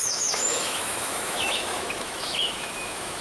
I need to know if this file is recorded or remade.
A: remade